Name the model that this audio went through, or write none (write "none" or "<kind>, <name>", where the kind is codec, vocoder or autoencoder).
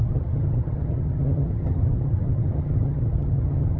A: vocoder, HiFi-GAN